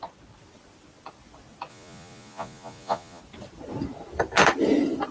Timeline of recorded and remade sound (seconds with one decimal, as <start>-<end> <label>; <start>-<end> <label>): 0.0-1.7 recorded; 1.7-3.2 remade; 3.2-5.1 recorded